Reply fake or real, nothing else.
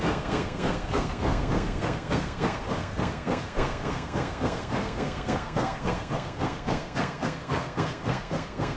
fake